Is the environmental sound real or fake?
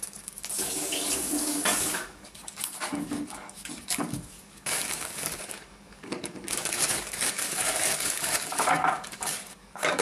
fake